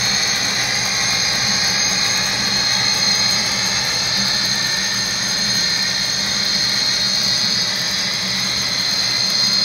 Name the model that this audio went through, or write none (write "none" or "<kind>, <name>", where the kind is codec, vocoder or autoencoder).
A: none